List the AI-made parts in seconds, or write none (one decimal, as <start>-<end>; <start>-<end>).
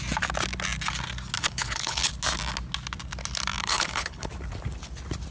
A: 1.4-2.1; 3.6-4.3